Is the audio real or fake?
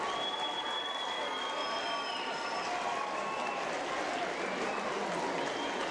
real